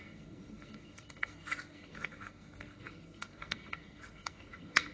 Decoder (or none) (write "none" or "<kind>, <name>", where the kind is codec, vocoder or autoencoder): codec, SNAC